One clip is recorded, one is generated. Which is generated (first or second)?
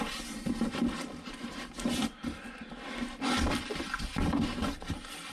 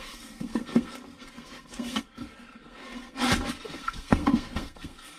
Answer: second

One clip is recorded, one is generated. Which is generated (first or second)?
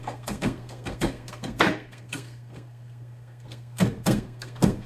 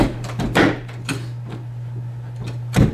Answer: first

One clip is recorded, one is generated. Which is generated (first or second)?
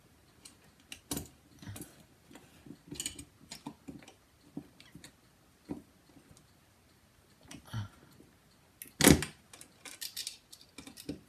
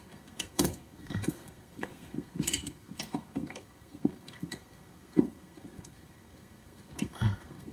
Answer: second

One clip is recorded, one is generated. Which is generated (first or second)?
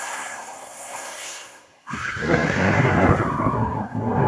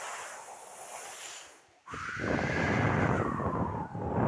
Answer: first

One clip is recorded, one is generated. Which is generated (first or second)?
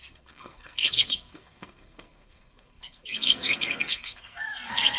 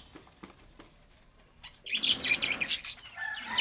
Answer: first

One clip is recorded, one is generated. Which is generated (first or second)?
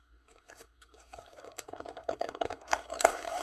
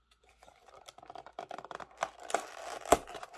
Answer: first